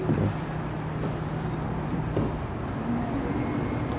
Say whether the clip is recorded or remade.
recorded